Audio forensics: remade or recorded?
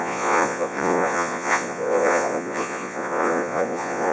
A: remade